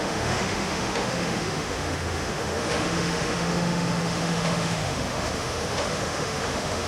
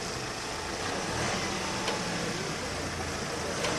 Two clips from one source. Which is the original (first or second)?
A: second